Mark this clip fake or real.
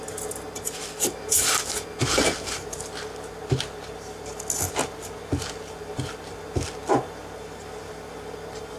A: real